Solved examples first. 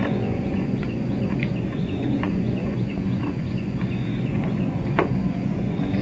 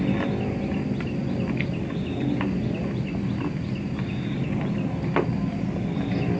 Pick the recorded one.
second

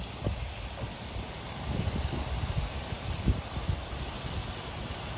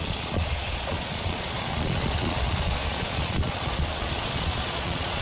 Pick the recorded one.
first